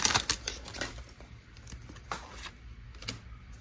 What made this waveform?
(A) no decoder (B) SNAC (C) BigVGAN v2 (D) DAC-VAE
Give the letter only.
A